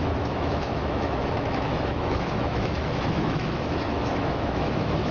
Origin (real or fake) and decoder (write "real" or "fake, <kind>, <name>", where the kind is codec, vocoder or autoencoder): fake, autoencoder, DAC-VAE